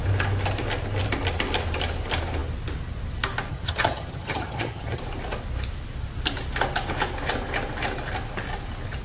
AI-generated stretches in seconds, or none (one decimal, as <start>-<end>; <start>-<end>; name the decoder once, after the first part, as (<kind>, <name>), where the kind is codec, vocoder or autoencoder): 3.5-5.0 (vocoder, HiFi-GAN)

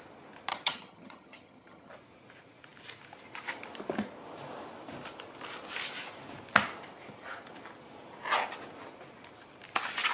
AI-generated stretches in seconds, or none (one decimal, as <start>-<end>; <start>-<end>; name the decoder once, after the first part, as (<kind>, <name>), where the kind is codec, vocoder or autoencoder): 0.5-1.9 (vocoder, HiFi-GAN)

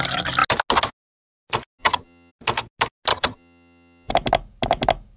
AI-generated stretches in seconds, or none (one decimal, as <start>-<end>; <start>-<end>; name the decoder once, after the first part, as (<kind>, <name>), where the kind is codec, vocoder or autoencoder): 1.8-2.3 (vocoder, HiFi-GAN); 3.1-4.1

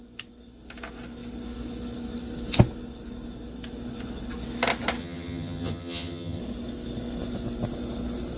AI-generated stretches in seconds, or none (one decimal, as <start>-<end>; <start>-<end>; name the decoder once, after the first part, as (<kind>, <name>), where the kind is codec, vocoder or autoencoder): 5.0-6.4 (vocoder, HiFi-GAN)

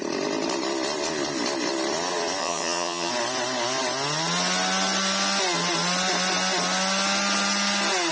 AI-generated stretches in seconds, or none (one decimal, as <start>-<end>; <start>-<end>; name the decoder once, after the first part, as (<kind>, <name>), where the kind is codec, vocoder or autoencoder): 2.4-3.1 (vocoder, HiFi-GAN)

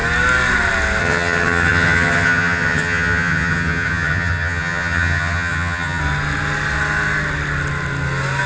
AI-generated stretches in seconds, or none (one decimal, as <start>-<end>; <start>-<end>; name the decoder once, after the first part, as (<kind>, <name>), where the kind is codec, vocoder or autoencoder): 1.0-6.0 (vocoder, HiFi-GAN)